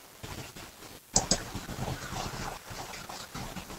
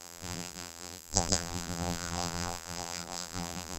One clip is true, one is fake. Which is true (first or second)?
first